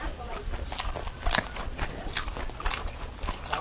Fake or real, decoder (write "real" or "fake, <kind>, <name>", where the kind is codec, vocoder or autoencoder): real